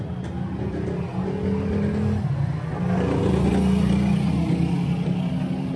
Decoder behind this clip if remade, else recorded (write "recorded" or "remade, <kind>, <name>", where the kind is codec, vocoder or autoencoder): recorded